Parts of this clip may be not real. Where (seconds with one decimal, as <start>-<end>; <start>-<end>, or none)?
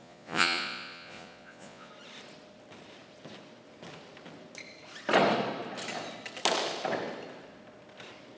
0.0-1.9